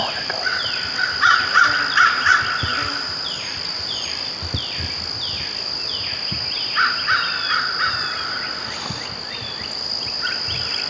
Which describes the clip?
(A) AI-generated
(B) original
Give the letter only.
B